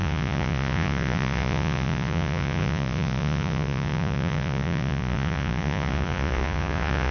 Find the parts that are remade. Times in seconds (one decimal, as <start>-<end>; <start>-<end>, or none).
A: 0.0-7.1